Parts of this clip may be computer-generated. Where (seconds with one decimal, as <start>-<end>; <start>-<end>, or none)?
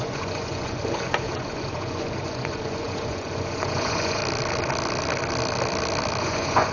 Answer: 0.0-4.2; 6.2-6.7